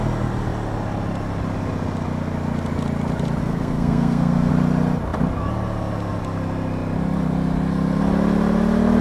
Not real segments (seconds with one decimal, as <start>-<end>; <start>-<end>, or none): 3.4-4.5